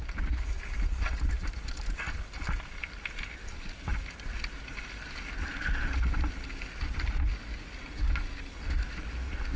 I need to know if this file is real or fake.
real